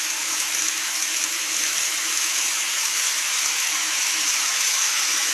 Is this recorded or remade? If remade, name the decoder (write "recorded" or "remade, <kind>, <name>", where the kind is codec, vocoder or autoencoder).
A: remade, autoencoder, DAC-VAE